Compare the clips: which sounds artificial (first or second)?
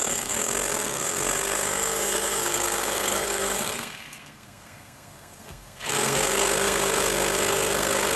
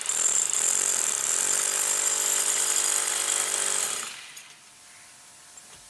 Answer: first